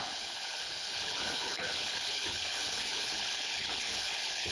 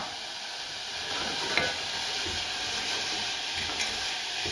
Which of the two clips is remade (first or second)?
first